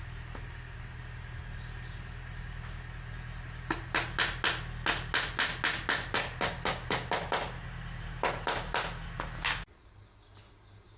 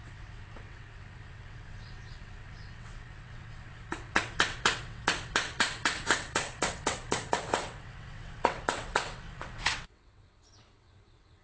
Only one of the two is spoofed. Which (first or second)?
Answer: second